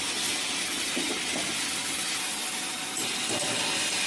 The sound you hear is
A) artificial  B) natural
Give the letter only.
B